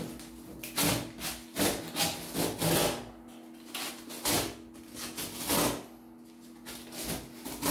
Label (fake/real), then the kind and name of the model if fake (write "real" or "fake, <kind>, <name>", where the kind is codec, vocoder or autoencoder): real